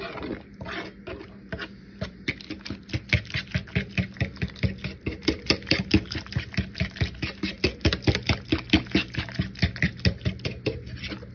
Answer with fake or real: real